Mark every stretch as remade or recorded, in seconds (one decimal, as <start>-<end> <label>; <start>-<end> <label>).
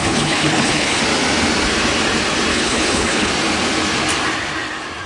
0.0-1.0 remade; 1.0-2.5 recorded; 2.5-3.3 remade; 3.3-5.1 recorded